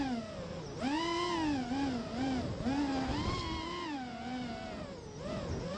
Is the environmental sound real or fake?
real